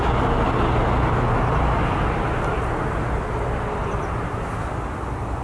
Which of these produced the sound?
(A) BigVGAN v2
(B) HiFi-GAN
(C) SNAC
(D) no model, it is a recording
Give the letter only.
D